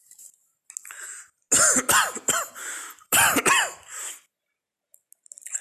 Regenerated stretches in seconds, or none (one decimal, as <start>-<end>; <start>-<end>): none